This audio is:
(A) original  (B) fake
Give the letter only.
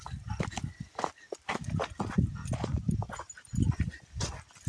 A